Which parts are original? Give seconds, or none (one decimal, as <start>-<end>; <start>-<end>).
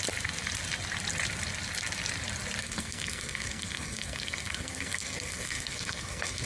0.0-2.6